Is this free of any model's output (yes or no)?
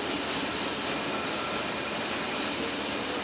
yes